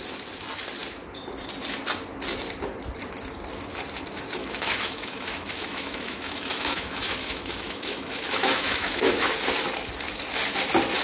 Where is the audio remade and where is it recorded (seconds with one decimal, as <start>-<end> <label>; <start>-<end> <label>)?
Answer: 0.0-4.4 recorded; 4.4-9.3 remade; 9.3-11.0 recorded